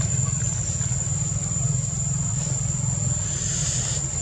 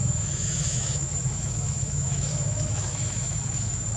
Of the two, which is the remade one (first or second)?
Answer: second